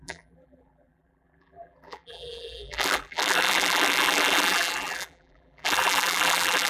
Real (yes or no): no